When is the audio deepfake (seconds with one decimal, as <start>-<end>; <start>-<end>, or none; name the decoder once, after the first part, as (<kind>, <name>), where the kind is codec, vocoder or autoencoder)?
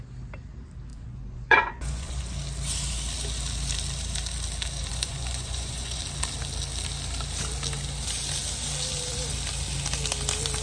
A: 0.9-2.2 (vocoder, Vocos); 4.9-6.0